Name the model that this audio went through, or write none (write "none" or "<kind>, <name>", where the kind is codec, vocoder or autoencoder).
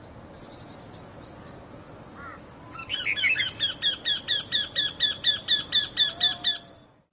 none